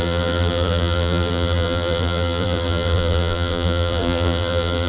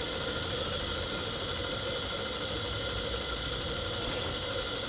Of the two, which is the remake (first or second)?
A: first